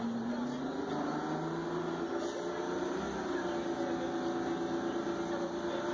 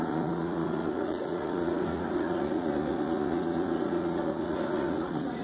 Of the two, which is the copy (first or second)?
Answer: second